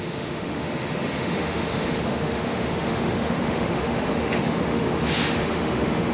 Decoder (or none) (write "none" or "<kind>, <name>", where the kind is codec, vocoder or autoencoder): autoencoder, DAC-VAE